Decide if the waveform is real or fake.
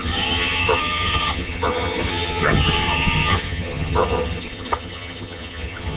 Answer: fake